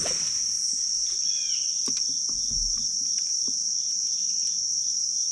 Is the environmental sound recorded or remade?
recorded